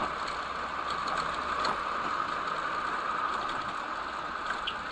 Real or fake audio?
real